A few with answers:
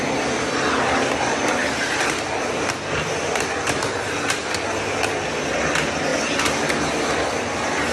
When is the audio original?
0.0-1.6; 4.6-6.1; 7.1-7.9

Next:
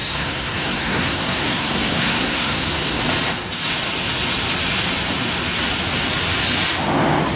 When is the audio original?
3.0-7.4